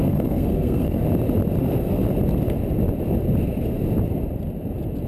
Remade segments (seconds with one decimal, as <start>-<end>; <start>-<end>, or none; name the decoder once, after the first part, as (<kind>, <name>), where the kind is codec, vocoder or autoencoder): 0.0-1.0 (codec, SNAC); 1.6-2.0